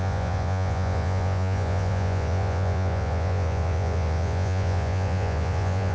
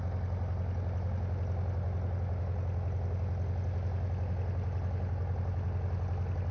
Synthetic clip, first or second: first